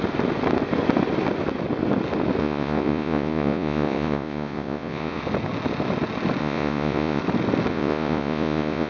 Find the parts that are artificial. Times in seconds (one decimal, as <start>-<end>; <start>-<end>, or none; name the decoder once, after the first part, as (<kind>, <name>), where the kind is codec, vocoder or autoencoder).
2.4-5.2 (vocoder, Vocos); 6.4-7.2; 7.7-8.9